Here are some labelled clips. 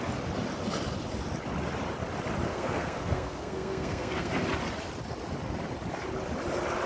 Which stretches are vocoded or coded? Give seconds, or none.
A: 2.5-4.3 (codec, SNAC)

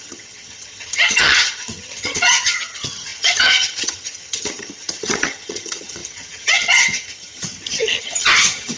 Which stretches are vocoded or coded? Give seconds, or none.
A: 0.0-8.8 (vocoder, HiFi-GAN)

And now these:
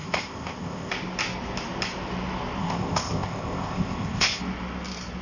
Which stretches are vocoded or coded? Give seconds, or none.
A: 0.0-0.9 (codec, ZipCodec); 2.6-4.4

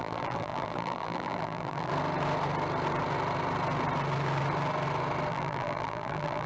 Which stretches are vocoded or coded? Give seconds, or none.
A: 0.0-1.9 (vocoder, BigVGAN v2); 5.3-6.5